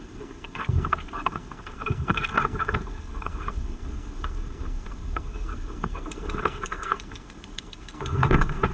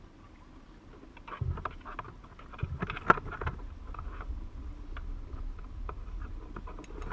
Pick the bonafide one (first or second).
second